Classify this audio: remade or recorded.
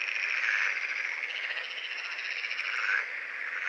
recorded